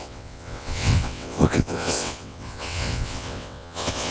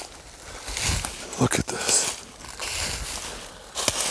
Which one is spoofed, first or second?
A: first